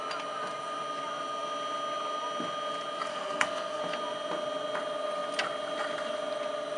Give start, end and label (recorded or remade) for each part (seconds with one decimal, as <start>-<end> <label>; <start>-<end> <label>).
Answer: 0.0-3.1 recorded; 3.1-3.8 remade; 3.8-6.8 recorded